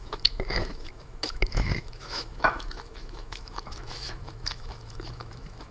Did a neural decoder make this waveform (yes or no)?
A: yes